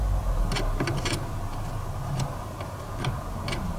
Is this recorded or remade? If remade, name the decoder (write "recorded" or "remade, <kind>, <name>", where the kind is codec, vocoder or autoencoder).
recorded